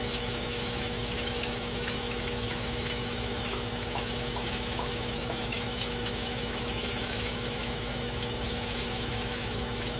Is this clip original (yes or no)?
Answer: no